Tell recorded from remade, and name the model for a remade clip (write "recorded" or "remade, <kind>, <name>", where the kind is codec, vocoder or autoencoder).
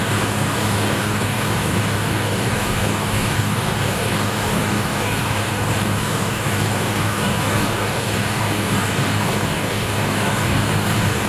remade, codec, DAC